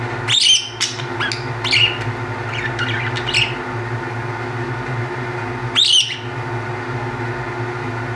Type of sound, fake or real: real